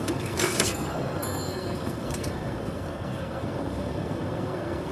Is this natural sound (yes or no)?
no